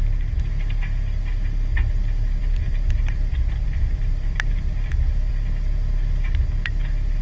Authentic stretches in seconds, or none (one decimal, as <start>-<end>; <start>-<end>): 0.0-2.4; 5.3-7.2